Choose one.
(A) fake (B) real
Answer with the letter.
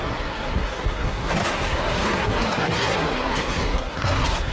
A